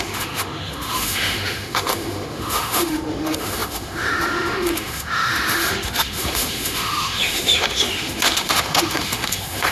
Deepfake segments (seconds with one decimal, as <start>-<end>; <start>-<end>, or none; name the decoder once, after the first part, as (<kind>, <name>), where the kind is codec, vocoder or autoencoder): 0.0-9.7 (autoencoder, DAC-VAE)